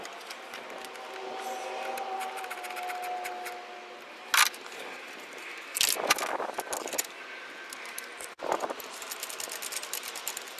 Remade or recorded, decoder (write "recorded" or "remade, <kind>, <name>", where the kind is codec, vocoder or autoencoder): recorded